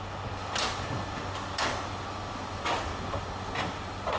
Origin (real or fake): real